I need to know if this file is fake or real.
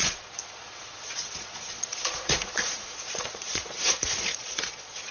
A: fake